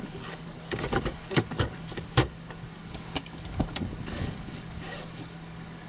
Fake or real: fake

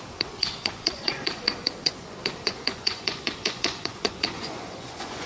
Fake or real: fake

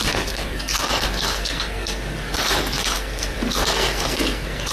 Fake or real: fake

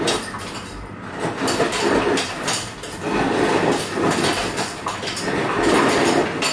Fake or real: real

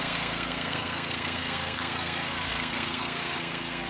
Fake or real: fake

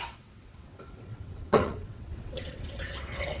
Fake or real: fake